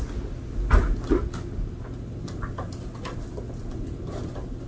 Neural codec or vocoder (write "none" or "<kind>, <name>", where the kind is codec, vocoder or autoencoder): none